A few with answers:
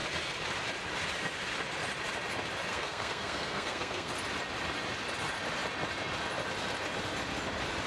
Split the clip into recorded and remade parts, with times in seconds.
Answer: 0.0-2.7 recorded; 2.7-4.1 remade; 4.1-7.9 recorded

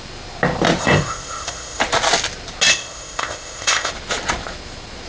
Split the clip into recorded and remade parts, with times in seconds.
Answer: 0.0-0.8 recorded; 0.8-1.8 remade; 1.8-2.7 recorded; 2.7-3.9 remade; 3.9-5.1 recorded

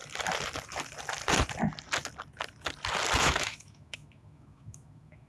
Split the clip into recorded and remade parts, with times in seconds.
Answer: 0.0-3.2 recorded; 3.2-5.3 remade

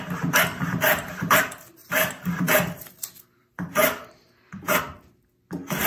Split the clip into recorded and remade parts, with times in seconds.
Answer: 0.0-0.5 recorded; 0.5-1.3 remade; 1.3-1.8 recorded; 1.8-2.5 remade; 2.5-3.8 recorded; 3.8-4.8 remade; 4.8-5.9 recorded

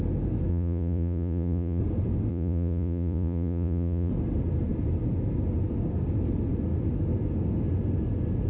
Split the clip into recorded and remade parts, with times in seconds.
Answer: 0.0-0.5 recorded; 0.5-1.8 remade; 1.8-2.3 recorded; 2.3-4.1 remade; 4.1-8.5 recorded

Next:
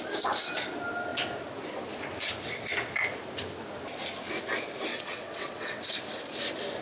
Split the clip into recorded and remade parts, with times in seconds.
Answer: 0.0-4.9 recorded; 4.9-5.8 remade; 5.8-6.8 recorded

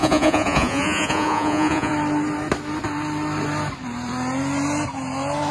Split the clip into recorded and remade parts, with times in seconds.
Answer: 0.0-1.9 remade; 1.9-5.5 recorded